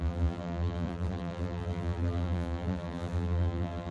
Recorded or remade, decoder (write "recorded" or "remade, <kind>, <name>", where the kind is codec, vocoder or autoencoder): remade, vocoder, BigVGAN v2